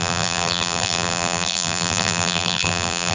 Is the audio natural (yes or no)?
no